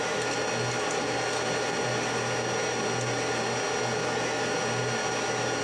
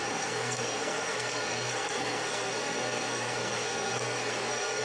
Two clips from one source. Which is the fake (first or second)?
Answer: second